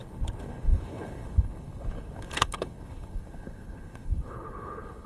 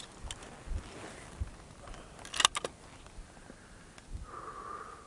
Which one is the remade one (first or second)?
first